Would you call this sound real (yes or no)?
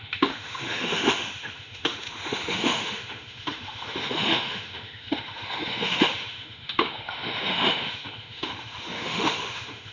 no